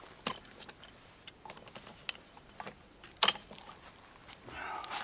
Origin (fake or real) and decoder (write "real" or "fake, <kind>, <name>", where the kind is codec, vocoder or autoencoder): real